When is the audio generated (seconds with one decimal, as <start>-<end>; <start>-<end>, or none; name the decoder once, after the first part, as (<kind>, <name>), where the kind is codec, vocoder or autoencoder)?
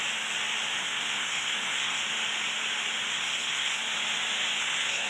0.8-2.0 (codec, SNAC); 3.1-3.8; 4.6-5.1